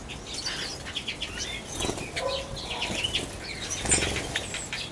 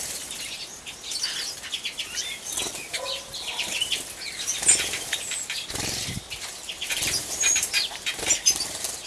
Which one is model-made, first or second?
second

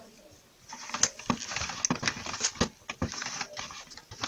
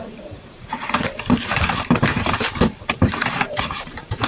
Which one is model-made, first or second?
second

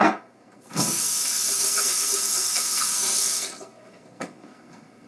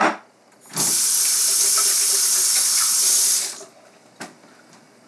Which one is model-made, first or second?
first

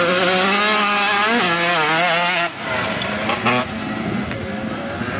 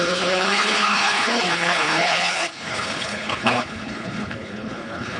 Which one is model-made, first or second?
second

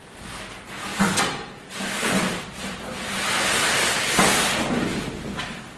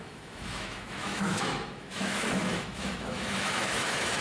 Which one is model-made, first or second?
second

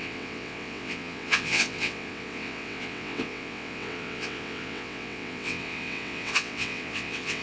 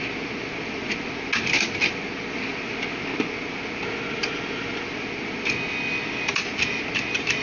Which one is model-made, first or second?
first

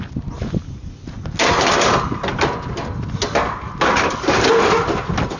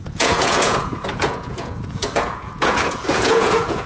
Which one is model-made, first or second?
second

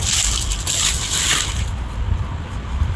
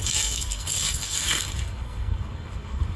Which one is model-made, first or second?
second